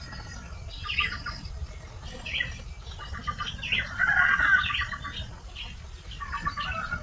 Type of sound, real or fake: real